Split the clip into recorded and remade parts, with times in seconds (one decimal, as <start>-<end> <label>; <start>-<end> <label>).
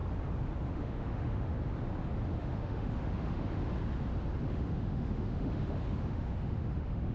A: 0.0-0.7 recorded; 0.7-1.5 remade; 1.5-2.4 recorded; 2.4-3.6 remade; 3.6-4.5 recorded; 4.5-7.1 remade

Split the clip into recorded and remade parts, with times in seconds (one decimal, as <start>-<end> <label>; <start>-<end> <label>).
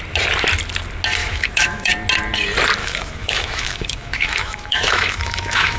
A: 0.0-1.2 recorded; 1.2-1.9 remade; 1.9-2.8 recorded; 2.8-5.8 remade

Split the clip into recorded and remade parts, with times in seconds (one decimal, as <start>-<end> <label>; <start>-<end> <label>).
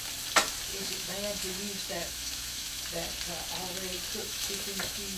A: 0.0-0.7 recorded; 0.7-2.8 remade; 2.8-4.2 recorded; 4.2-5.2 remade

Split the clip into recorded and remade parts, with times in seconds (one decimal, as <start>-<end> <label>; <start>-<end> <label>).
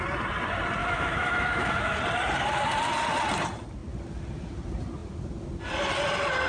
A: 0.0-0.8 recorded; 0.8-2.0 remade; 2.0-6.5 recorded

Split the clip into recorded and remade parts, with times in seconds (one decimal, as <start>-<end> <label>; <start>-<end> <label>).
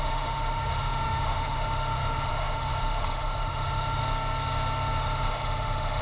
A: 0.0-4.0 remade; 4.0-5.0 recorded; 5.0-6.0 remade